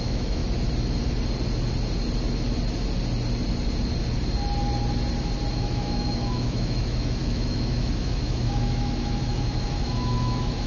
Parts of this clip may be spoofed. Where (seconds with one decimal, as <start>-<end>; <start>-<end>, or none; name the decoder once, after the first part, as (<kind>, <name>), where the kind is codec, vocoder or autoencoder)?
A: 0.0-0.4 (autoencoder, DAC-VAE); 5.5-10.7